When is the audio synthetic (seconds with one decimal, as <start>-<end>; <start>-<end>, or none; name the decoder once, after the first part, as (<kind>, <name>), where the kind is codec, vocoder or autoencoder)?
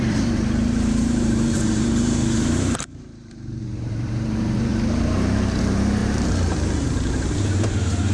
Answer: 0.0-8.1 (vocoder, BigVGAN v2)